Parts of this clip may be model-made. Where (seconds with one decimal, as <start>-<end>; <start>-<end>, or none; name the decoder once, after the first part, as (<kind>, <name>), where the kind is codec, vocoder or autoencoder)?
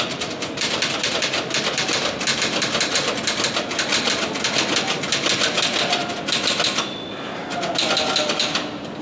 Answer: none